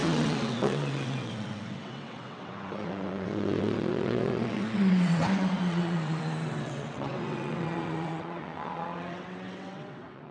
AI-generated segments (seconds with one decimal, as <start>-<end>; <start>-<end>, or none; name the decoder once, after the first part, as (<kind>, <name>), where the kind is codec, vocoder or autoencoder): 0.0-10.3 (vocoder, WaveNeXt)